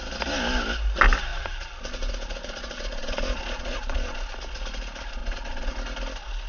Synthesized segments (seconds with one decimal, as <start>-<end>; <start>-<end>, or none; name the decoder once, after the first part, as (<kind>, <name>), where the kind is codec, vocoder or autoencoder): 1.3-4.3 (vocoder, Vocos); 5.2-5.7